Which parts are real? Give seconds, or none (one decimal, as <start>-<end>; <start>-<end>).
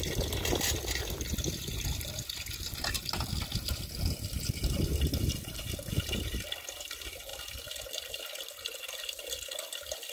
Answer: 0.0-10.1